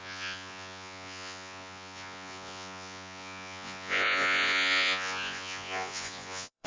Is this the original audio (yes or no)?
no